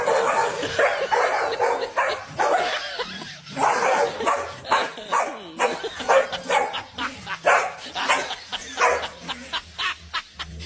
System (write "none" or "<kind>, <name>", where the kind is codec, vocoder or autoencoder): none